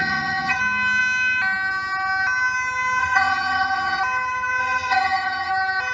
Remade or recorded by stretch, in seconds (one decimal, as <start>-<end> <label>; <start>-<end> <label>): 0.0-0.6 remade; 0.6-3.0 recorded; 3.0-4.0 remade; 4.0-4.6 recorded; 4.6-5.5 remade; 5.5-5.9 recorded